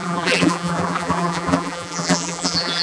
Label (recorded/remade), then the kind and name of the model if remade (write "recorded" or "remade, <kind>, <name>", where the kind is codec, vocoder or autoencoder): remade, vocoder, BigVGAN v2